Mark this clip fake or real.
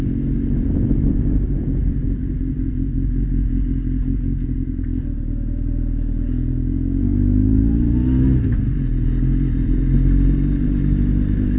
real